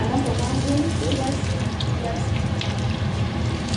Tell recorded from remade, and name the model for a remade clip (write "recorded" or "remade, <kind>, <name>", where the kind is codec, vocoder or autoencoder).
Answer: remade, vocoder, BigVGAN v2